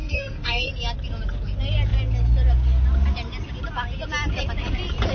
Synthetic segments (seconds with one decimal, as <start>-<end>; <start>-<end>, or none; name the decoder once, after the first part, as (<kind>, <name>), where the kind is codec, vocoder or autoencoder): 0.0-0.7 (codec, SNAC)